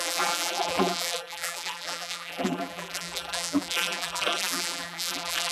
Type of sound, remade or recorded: remade